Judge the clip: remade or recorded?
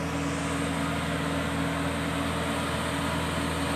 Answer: recorded